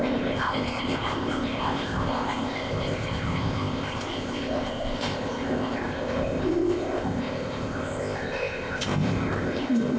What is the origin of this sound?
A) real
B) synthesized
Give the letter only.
B